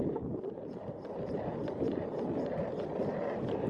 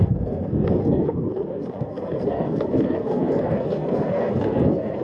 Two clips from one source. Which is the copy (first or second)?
second